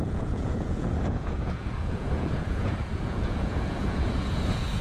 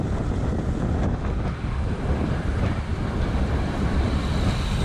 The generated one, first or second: first